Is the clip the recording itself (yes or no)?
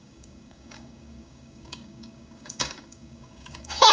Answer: no